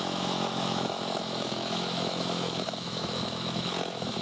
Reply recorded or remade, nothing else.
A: remade